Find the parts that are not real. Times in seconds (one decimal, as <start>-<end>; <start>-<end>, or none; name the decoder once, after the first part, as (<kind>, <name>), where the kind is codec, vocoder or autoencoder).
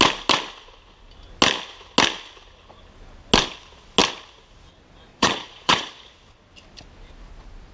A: 5.1-6.0 (vocoder, Vocos)